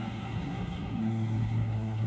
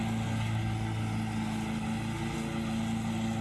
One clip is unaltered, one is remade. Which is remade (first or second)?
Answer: first